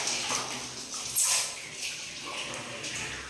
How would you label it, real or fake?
real